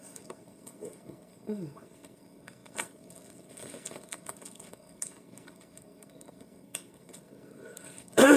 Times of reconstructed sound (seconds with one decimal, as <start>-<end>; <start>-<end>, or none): 0.0-8.4

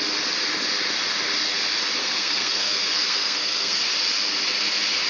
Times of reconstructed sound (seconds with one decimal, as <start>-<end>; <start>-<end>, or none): 2.0-3.8

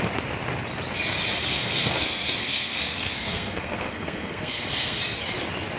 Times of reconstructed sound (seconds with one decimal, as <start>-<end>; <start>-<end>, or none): 1.5-5.0

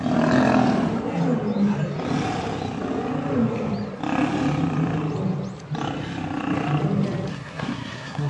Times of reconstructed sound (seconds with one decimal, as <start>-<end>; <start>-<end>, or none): 7.3-8.3